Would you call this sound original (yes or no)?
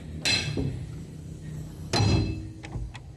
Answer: yes